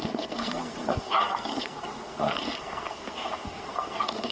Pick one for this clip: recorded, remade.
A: remade